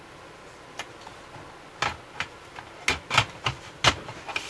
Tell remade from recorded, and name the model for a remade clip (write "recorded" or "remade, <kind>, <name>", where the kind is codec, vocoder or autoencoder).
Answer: recorded